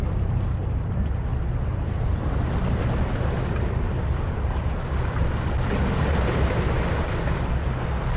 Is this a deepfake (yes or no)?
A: no